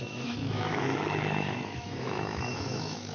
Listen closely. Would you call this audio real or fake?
fake